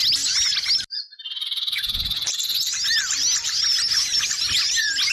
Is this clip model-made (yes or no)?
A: no